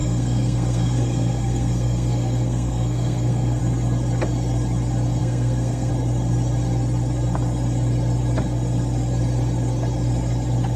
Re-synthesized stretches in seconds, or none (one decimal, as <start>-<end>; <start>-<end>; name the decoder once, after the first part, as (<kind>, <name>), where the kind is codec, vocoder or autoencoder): 0.0-3.6 (codec, SNAC); 5.2-5.9